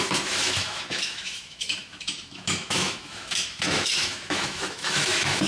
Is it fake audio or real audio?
fake